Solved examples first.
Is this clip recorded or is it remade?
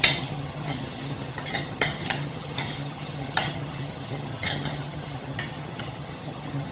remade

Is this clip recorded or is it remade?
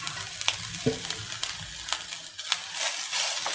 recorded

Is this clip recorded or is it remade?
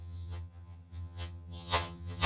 remade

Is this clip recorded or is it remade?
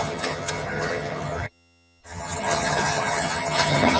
remade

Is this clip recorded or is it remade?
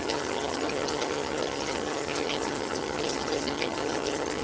remade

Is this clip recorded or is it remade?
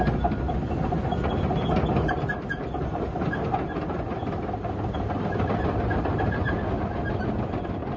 recorded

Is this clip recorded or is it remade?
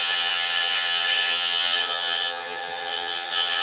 remade